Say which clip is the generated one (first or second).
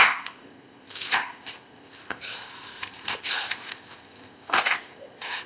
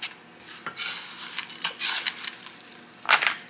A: first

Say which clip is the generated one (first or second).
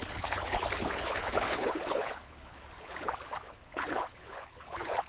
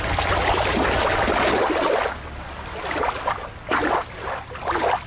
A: first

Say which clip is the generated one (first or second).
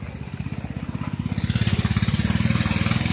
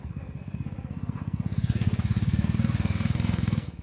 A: second